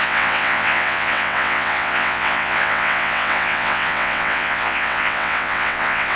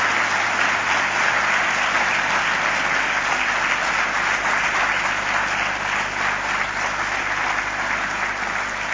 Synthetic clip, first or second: first